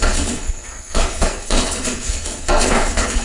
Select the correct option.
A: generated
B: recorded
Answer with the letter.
A